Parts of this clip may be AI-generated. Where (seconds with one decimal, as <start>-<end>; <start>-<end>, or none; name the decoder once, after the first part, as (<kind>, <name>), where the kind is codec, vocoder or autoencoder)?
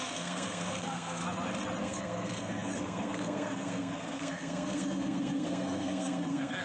0.0-1.2 (codec, SNAC); 1.8-6.6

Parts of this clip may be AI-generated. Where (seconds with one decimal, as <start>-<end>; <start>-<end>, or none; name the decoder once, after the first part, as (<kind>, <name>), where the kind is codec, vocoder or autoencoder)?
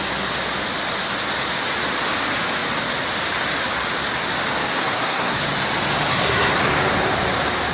4.8-5.4 (codec, SNAC); 6.1-6.6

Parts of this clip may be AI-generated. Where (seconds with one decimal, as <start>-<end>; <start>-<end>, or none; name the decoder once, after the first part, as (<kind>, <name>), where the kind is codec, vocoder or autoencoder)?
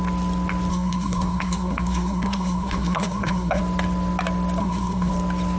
0.7-3.6 (codec, SNAC); 4.6-5.1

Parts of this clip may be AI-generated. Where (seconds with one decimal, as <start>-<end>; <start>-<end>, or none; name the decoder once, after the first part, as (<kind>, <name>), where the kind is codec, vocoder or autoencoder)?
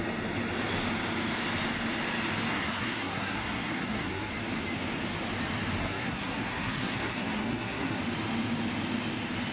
2.5-4.3 (codec, SNAC); 5.8-8.0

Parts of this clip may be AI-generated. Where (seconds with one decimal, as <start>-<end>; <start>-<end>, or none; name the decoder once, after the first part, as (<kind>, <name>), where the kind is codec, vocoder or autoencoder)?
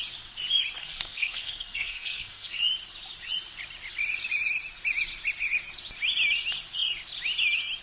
0.8-2.6 (codec, SNAC)